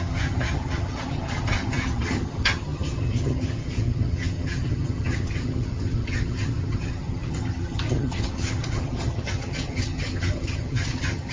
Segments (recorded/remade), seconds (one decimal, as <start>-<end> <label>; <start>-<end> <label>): 0.0-11.3 remade